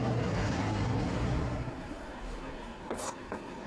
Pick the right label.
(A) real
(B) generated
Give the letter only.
B